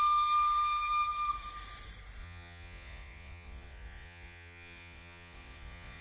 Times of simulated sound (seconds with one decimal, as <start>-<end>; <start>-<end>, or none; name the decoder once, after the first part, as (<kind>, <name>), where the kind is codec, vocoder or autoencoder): 2.2-6.0 (vocoder, Vocos)